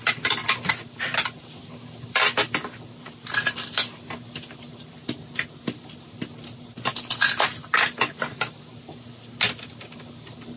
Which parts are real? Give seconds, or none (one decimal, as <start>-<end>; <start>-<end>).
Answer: 0.0-10.6